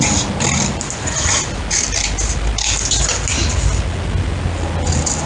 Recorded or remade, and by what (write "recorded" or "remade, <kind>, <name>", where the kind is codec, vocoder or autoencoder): recorded